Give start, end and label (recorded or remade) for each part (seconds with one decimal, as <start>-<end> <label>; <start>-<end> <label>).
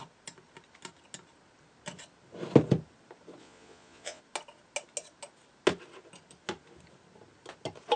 0.0-3.4 recorded; 3.4-4.2 remade; 4.2-8.0 recorded